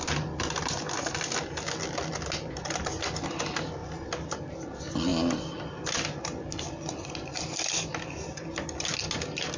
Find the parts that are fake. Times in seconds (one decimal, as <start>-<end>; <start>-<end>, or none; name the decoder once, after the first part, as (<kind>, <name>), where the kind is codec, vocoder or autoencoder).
none

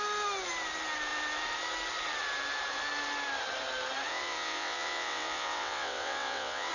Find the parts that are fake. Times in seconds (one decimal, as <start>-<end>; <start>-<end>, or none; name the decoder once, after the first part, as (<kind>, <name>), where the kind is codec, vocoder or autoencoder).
4.1-6.7 (vocoder, WaveNeXt)

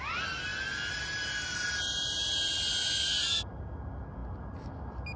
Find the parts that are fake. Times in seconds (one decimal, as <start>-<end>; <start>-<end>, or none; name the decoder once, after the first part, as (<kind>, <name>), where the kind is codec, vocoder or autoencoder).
none

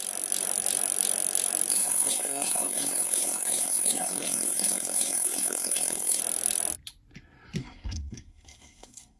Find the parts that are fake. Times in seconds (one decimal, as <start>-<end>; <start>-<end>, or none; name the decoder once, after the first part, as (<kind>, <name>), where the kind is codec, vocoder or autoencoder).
1.7-6.2 (codec, SNAC); 7.6-9.2

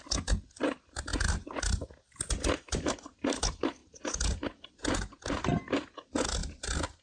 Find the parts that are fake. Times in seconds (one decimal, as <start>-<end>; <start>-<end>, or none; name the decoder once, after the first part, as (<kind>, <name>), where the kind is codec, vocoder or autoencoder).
none

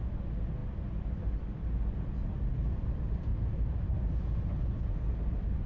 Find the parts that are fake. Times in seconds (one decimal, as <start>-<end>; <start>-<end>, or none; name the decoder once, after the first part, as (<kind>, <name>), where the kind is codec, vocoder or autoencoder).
3.3-4.6 (vocoder, BigVGAN v2)